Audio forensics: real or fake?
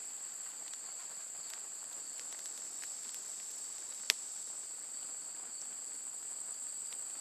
real